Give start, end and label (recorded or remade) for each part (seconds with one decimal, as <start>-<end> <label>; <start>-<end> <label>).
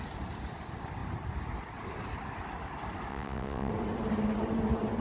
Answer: 0.0-3.1 recorded; 3.1-3.7 remade; 3.7-5.0 recorded